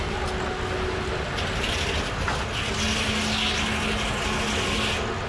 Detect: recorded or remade recorded